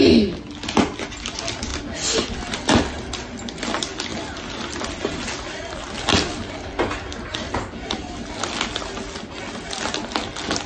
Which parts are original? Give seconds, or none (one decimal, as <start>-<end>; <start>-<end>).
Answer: 0.0-10.7